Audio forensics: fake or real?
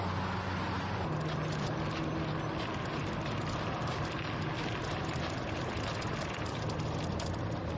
real